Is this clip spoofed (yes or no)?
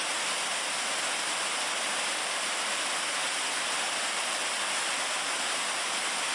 no